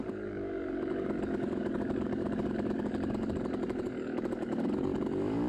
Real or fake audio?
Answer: fake